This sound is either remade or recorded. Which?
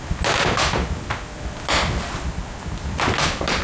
recorded